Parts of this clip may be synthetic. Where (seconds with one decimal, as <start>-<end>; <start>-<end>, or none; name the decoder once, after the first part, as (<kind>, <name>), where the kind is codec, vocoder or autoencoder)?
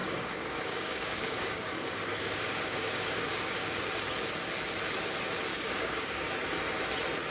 0.0-3.8 (codec, DAC); 5.5-6.3